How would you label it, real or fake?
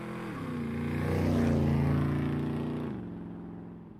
real